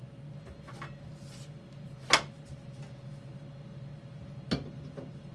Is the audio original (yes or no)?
yes